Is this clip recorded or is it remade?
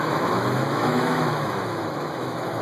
remade